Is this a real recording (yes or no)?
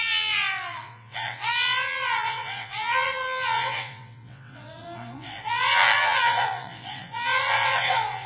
no